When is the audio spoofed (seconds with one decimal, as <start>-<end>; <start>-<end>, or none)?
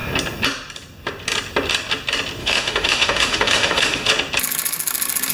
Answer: 2.4-4.1